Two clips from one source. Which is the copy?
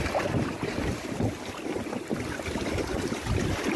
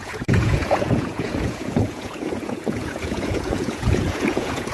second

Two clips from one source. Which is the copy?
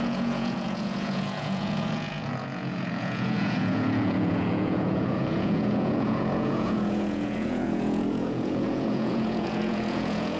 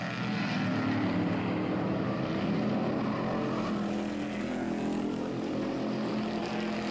first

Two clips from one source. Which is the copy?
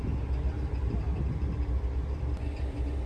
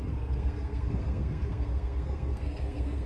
second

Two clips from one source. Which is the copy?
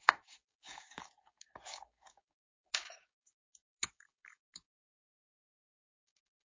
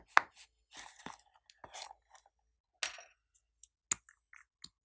first